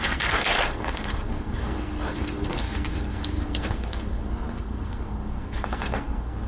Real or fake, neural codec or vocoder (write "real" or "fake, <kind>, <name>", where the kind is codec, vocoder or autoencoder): fake, codec, SNAC